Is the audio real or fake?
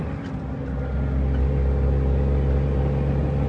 real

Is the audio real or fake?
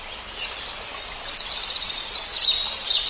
real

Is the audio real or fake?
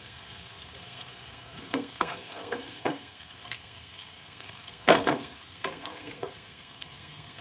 fake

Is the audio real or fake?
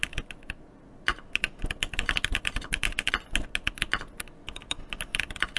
real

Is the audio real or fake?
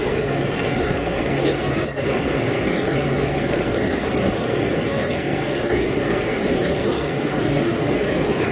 fake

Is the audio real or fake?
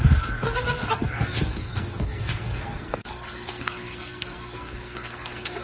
fake